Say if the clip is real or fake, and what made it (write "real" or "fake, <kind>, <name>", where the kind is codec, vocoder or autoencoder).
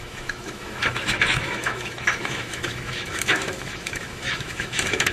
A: fake, autoencoder, DAC-VAE